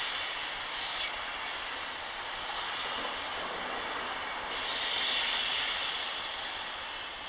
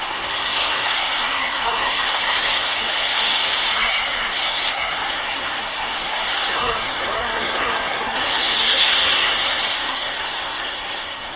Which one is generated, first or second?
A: second